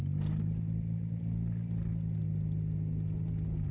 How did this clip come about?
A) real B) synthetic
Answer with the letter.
A